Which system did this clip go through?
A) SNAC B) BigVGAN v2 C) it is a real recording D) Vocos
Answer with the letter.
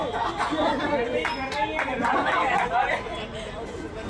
C